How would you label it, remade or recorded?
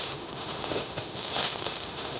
remade